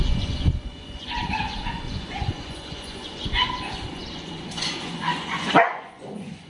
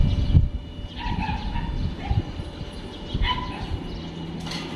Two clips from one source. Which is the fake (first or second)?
first